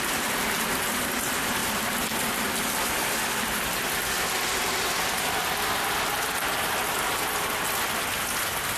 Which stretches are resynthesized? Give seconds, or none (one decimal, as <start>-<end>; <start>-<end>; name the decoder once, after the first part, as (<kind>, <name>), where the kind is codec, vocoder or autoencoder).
1.6-3.3 (vocoder, BigVGAN v2)